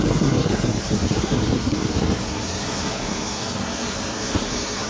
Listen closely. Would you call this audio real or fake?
fake